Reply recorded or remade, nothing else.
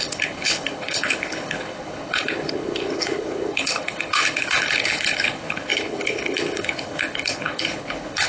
remade